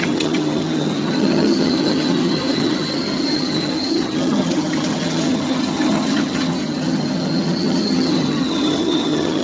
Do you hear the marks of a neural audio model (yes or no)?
yes